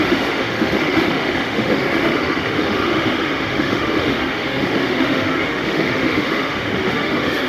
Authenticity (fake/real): fake